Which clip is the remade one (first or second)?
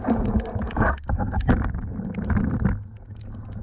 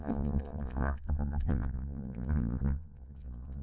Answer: second